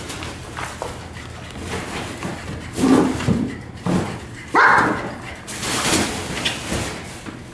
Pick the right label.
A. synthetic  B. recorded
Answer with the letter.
B